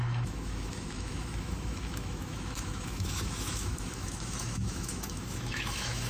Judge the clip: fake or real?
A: fake